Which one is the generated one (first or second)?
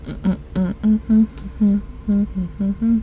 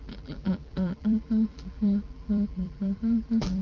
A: second